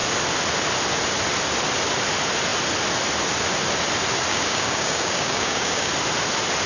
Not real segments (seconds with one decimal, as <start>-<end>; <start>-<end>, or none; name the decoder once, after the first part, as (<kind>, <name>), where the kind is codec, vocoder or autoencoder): 4.3-5.9 (codec, DAC)